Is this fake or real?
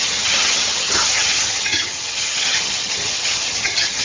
fake